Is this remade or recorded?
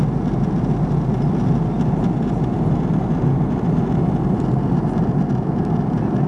recorded